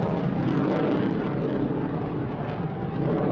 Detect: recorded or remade recorded